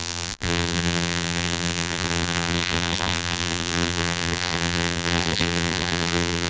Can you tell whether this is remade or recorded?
remade